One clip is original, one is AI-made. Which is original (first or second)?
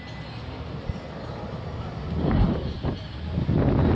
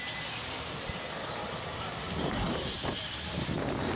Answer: first